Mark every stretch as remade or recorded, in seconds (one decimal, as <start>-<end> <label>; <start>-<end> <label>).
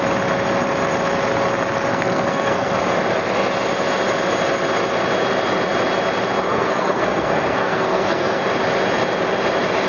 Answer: 0.0-1.9 recorded; 1.9-2.7 remade; 2.7-6.5 recorded; 6.5-8.5 remade; 8.5-9.9 recorded